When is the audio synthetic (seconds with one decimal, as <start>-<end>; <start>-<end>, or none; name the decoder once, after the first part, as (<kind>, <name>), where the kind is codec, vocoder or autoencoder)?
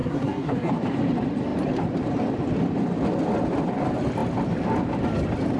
0.0-0.7 (codec, SNAC)